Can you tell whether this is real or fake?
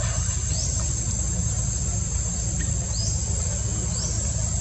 real